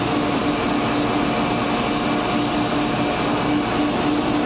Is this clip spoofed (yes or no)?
no